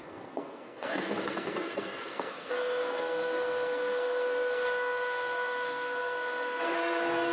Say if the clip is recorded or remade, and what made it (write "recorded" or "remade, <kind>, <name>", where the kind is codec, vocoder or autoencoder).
remade, codec, SNAC